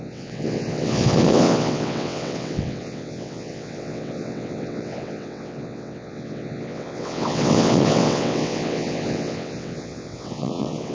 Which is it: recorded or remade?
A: remade